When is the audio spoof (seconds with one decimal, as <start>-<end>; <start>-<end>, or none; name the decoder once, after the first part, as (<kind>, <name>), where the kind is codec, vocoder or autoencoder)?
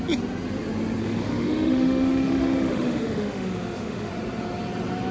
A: 1.0-4.1 (autoencoder, DAC-VAE)